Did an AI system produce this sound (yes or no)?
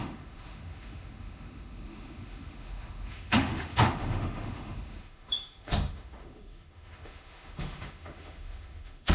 yes